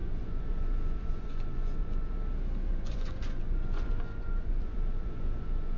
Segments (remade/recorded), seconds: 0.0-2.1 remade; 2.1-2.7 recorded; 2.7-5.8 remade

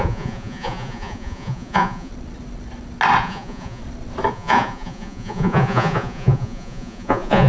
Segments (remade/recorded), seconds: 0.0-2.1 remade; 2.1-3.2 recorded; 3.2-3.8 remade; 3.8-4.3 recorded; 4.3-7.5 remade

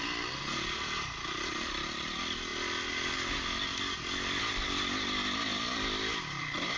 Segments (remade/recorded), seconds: 0.0-6.8 recorded

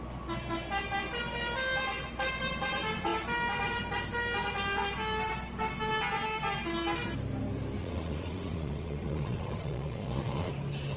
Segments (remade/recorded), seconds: 0.0-7.8 recorded; 7.8-10.5 remade; 10.5-11.0 recorded